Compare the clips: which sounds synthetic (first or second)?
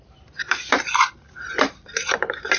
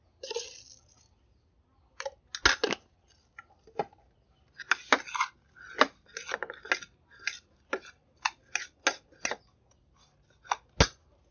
first